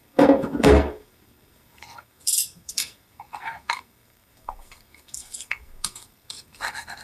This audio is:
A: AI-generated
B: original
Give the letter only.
A